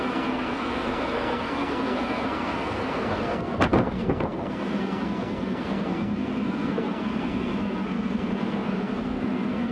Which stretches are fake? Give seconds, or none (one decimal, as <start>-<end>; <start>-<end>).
0.0-9.7